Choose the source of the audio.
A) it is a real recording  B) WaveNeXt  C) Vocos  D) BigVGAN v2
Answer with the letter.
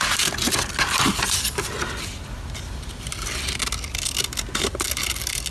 A